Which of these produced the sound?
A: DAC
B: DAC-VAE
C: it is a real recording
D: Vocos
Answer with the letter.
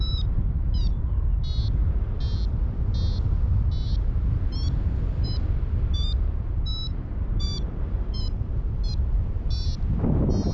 C